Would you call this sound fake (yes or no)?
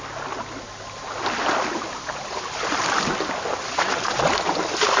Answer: no